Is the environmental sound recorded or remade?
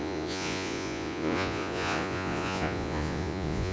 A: remade